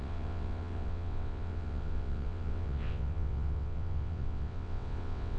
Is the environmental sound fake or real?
fake